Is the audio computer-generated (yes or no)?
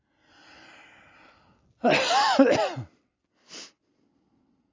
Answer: no